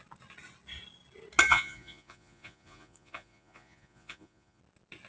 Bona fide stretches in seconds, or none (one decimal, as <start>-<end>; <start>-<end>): 0.0-1.5; 4.6-5.1